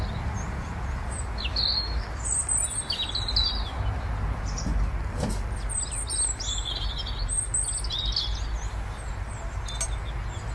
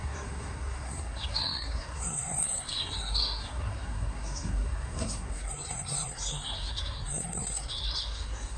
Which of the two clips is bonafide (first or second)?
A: first